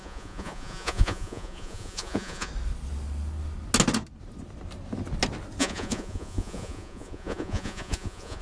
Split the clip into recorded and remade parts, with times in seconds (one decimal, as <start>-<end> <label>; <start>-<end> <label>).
0.0-2.5 remade; 2.5-5.6 recorded; 5.6-8.4 remade